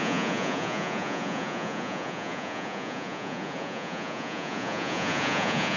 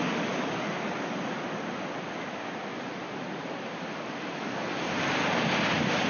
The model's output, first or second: first